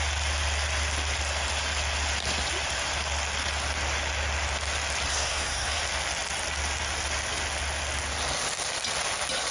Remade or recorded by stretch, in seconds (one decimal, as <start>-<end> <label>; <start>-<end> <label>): 0.0-5.1 recorded; 5.1-5.8 remade; 5.8-9.5 recorded